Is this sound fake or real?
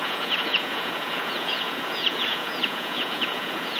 fake